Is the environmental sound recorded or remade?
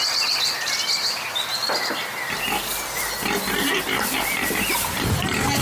recorded